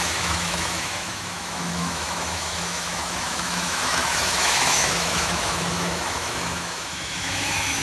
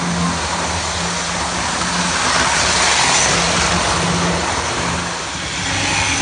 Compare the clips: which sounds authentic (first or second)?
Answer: second